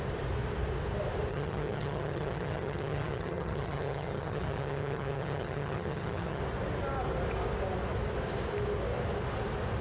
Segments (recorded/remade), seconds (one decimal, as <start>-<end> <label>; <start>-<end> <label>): 0.0-1.3 recorded; 1.3-6.4 remade; 6.4-9.8 recorded